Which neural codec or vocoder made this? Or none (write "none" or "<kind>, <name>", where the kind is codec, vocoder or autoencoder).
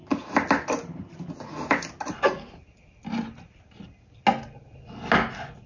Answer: none